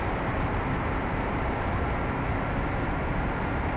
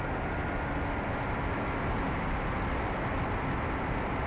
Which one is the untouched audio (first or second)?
second